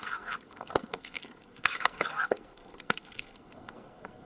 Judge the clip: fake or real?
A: fake